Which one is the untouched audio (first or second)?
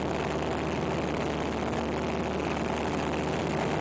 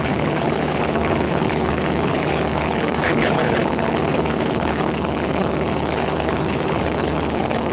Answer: first